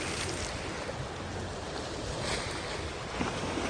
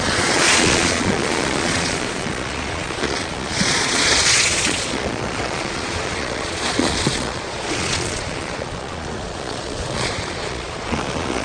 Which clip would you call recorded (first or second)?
first